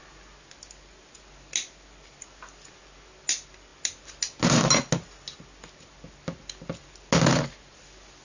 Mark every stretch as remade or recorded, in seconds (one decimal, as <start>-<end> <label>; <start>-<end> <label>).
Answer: 0.0-8.2 recorded

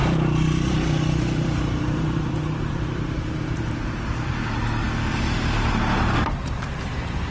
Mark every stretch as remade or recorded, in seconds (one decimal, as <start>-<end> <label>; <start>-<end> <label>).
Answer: 0.0-4.4 remade; 4.4-5.1 recorded; 5.1-7.3 remade

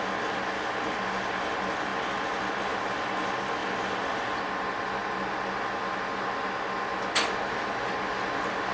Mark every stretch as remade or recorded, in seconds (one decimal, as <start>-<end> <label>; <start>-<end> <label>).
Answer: 0.0-8.7 recorded

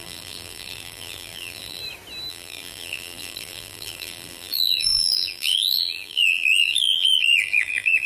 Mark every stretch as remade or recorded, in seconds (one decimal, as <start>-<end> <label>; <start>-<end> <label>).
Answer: 0.0-1.8 remade; 1.8-2.3 recorded; 2.3-8.1 remade

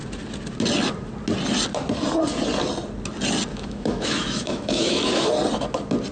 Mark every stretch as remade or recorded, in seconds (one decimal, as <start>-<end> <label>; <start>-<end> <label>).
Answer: 0.0-3.5 recorded; 3.5-5.3 remade; 5.3-6.1 recorded